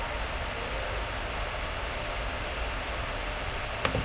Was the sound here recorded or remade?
recorded